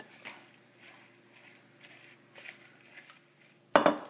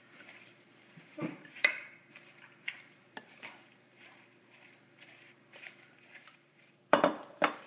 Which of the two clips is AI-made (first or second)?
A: second